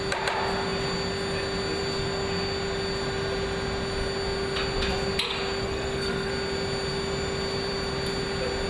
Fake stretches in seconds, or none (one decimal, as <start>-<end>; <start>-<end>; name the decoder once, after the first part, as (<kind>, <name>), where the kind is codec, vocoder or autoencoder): 5.6-6.3 (codec, SNAC)